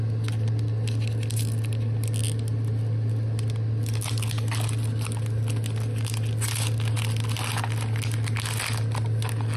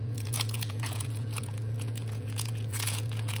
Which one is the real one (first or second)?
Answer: first